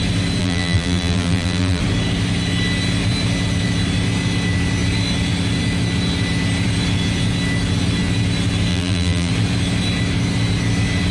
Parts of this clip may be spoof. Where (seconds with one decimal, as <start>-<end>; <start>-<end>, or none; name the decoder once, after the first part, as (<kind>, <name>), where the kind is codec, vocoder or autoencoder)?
0.4-1.8 (vocoder, BigVGAN v2); 8.7-9.3